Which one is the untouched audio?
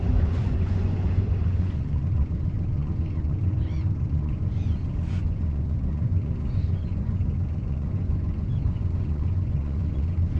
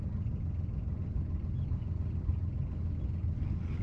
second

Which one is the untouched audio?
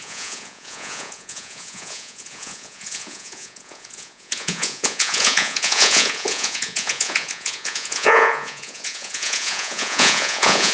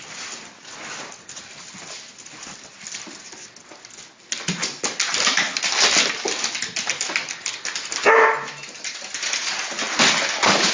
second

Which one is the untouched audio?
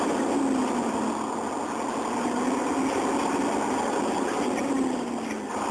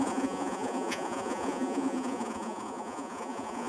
first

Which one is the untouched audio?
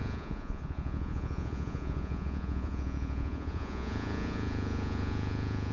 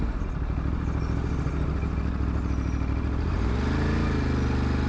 second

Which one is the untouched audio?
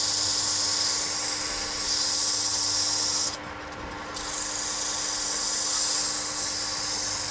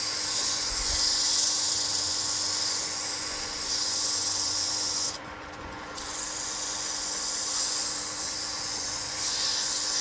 first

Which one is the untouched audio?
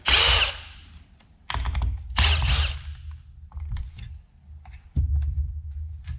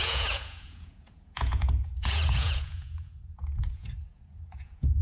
first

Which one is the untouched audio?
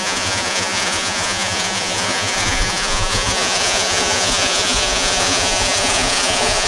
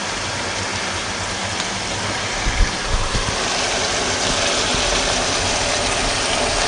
second